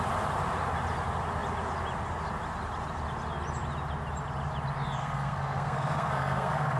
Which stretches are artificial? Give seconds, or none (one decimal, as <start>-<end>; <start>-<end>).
5.0-6.8